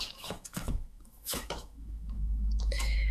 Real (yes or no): no